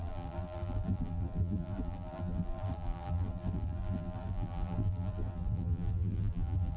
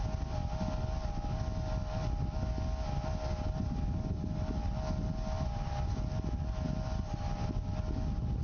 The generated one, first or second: first